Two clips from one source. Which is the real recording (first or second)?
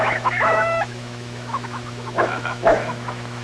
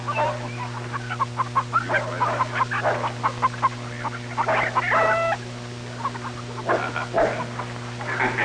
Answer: second